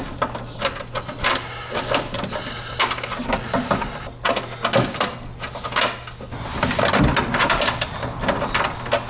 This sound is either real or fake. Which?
real